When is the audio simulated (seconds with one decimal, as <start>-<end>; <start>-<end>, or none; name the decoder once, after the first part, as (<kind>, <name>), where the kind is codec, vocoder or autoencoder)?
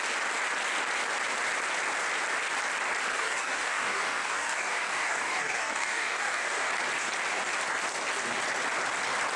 3.1-6.7 (codec, DAC)